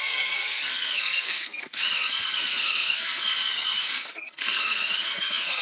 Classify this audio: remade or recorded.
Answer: remade